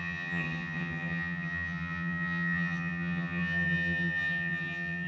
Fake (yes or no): yes